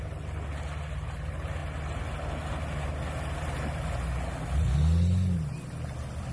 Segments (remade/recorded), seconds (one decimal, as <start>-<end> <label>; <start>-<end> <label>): 0.0-6.3 recorded